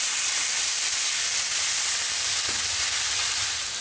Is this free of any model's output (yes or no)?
yes